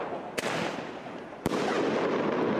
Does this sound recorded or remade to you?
recorded